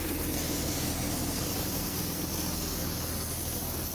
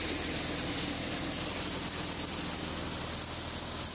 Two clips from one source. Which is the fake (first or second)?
first